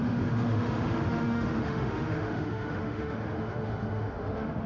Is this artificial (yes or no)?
yes